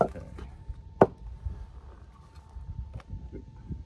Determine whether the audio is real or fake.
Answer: real